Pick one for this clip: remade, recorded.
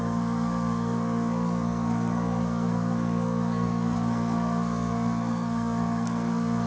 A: remade